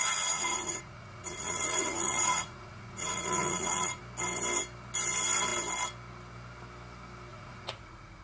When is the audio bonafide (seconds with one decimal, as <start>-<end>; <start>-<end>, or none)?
4.0-7.3